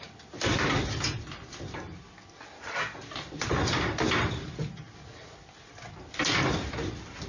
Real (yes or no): yes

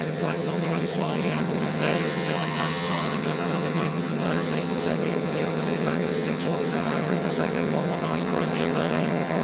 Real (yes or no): no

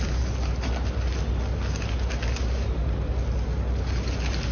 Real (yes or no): yes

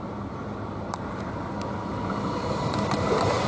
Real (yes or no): yes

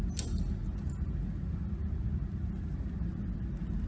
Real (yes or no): yes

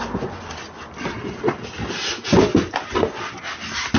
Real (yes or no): yes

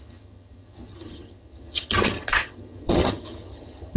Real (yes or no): no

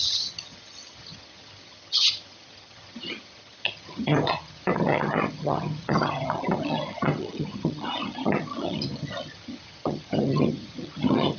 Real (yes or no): no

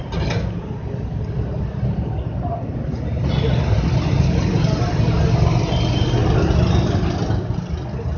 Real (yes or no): yes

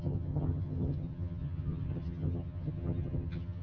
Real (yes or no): no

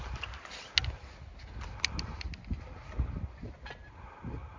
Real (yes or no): yes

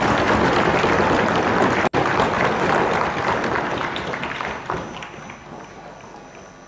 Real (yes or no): yes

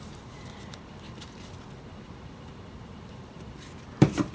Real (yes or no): yes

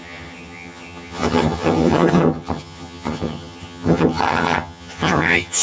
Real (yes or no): no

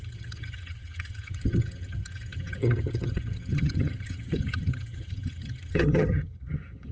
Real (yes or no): no